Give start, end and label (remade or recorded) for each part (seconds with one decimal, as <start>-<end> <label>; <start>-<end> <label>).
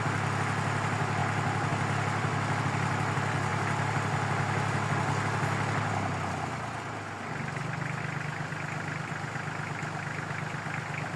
0.0-11.2 recorded